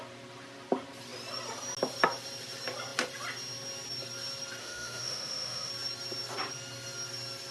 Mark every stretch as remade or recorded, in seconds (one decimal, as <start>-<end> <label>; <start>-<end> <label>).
0.0-4.6 recorded; 4.6-5.7 remade; 5.7-7.5 recorded